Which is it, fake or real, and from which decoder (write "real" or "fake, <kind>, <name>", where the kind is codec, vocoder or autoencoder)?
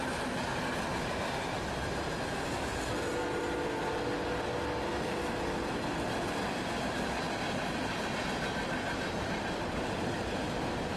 real